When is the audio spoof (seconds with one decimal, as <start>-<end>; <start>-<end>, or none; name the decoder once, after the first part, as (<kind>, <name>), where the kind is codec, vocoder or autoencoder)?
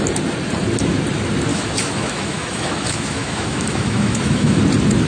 1.5-4.6 (autoencoder, DAC-VAE)